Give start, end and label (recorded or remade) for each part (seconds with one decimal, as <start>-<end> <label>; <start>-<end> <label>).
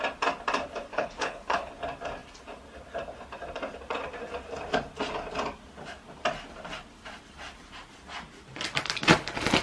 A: 0.0-0.9 recorded; 0.9-1.7 remade; 1.7-9.6 recorded